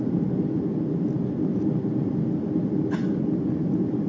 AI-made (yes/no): no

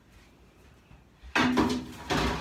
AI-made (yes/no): no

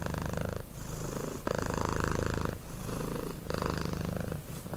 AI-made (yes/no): no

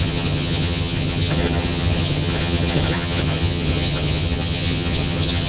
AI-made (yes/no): yes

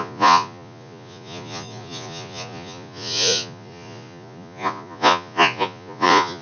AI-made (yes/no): yes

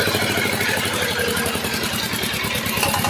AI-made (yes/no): no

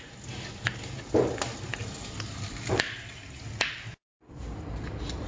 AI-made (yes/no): no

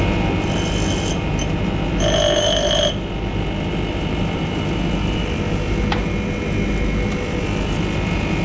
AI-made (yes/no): no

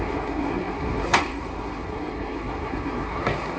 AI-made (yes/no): yes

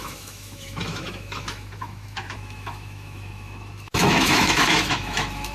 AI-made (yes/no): yes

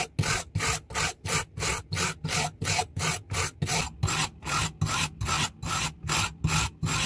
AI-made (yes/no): no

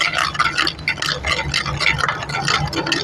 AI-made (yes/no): no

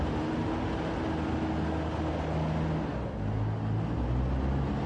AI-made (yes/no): no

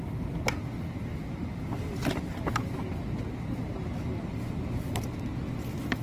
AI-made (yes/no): no